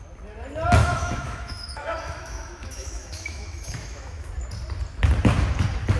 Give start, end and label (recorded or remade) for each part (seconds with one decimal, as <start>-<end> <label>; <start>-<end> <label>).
0.0-0.8 recorded; 0.8-4.3 remade; 4.3-6.0 recorded